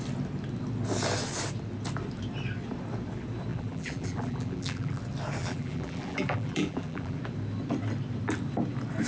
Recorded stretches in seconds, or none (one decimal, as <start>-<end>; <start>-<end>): 0.0-3.5; 5.0-5.4; 7.2-9.1